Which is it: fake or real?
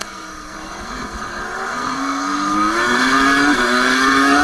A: fake